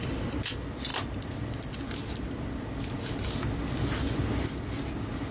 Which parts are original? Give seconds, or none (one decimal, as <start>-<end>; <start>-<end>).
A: 0.0-5.3